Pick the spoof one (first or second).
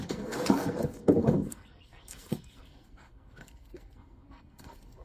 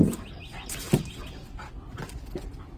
first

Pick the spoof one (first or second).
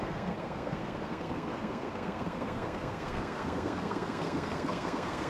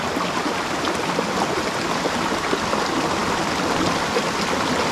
first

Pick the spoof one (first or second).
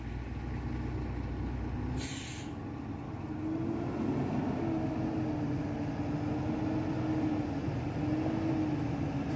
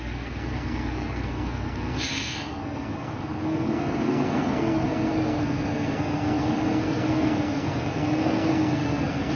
second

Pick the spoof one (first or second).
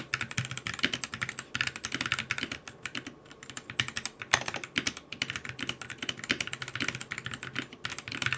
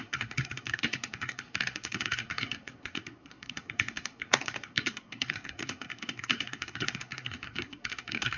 second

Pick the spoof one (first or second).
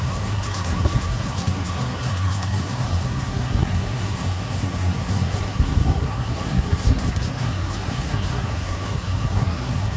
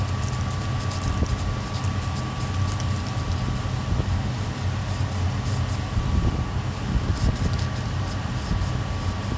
first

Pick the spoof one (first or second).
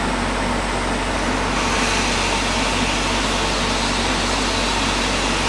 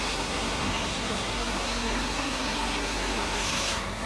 second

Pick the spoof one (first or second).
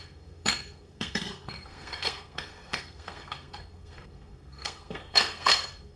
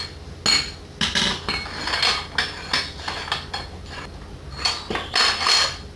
first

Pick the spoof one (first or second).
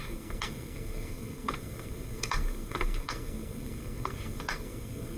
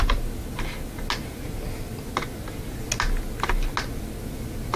first